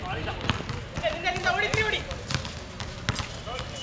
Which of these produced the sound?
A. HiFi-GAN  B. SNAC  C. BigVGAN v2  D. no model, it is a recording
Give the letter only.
D